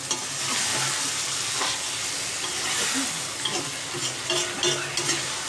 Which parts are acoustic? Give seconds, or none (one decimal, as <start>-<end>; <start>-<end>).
0.0-0.7; 2.1-4.0; 4.6-5.5